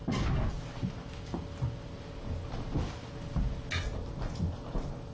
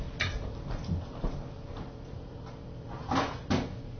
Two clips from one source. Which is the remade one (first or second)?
second